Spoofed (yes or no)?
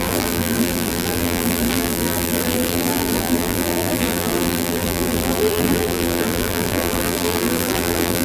yes